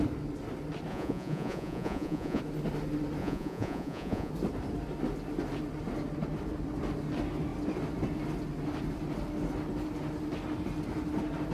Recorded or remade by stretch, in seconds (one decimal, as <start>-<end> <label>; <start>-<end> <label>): 0.0-0.9 recorded; 0.9-2.4 remade; 2.4-3.2 recorded; 3.2-4.3 remade; 4.3-11.5 recorded